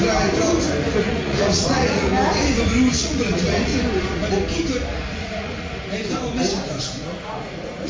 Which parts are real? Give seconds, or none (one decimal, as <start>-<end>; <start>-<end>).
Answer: 0.0-1.0; 2.1-2.9; 3.7-5.1; 5.7-6.8